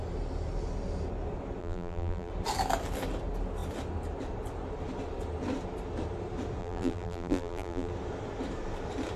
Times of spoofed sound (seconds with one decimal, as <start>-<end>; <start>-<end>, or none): 1.6-2.3; 6.6-7.9